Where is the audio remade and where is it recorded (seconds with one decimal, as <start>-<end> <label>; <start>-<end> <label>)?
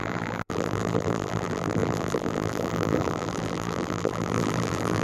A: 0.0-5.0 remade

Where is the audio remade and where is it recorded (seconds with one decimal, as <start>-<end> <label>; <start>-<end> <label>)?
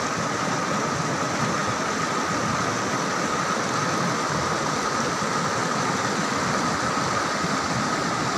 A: 0.0-1.6 recorded; 1.6-2.5 remade; 2.5-5.6 recorded; 5.6-6.7 remade; 6.7-8.4 recorded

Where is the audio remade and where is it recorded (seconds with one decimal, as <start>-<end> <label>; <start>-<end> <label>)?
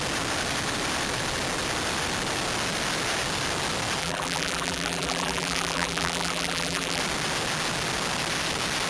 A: 0.0-4.0 recorded; 4.0-7.0 remade; 7.0-8.9 recorded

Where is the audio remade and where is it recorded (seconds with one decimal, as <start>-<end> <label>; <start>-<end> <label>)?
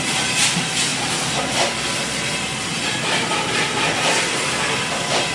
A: 0.0-5.3 recorded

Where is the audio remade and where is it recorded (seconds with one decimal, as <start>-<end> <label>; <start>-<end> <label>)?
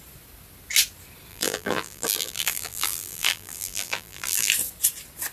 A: 0.0-1.3 recorded; 1.3-4.5 remade; 4.5-5.3 recorded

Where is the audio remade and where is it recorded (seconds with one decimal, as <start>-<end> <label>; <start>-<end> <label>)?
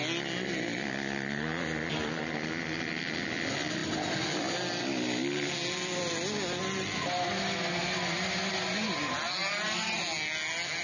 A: 0.0-9.4 recorded; 9.4-10.0 remade; 10.0-10.8 recorded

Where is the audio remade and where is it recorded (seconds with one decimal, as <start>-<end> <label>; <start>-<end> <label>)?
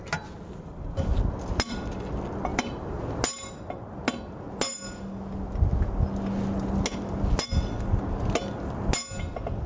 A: 0.0-2.5 recorded; 2.5-3.0 remade; 3.0-9.7 recorded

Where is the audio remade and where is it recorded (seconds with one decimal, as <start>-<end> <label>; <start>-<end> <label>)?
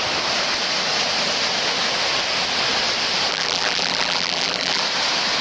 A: 0.0-3.3 recorded; 3.3-4.8 remade; 4.8-5.4 recorded